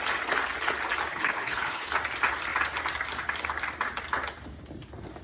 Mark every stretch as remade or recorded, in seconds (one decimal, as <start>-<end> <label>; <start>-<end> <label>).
0.0-1.1 recorded; 1.1-1.9 remade; 1.9-5.2 recorded